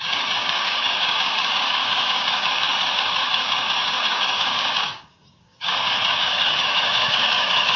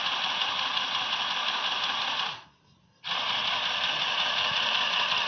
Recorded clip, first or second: second